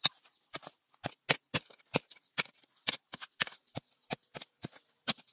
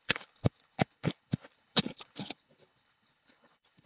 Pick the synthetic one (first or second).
second